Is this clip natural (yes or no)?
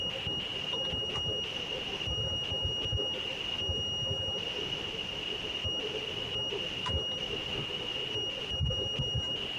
yes